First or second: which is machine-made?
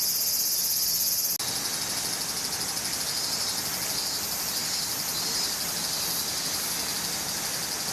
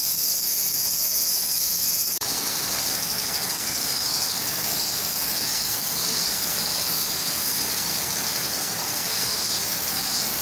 second